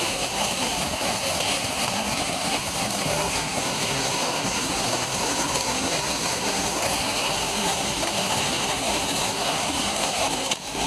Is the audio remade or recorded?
remade